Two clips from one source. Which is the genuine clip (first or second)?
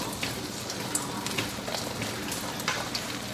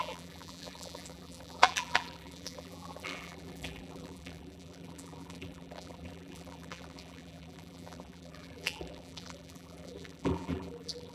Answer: first